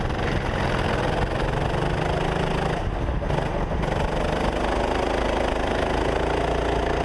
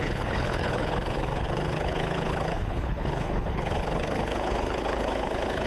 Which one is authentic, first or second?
first